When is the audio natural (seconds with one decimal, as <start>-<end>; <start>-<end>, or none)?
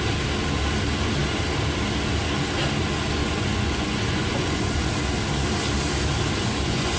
0.0-3.2; 4.9-6.4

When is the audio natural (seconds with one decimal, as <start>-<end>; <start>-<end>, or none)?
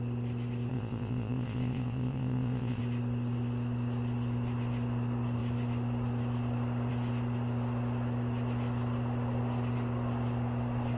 0.0-0.7; 2.8-11.0